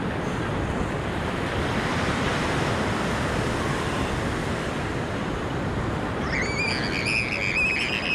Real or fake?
real